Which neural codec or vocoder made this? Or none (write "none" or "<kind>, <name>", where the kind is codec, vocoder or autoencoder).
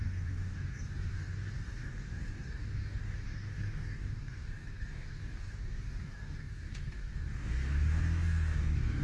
codec, DAC